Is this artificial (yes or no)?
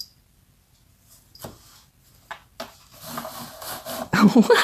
no